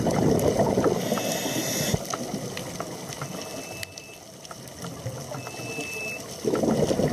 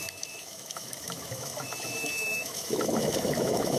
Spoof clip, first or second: second